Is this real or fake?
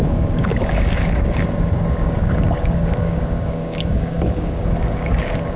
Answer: fake